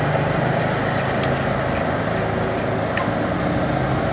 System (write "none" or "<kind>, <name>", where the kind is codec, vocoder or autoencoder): none